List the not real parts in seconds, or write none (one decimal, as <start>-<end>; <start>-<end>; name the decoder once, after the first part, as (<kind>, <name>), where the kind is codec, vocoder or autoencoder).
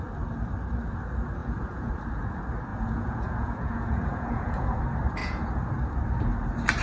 1.4-1.9 (vocoder, Vocos); 2.7-4.8; 5.2-5.7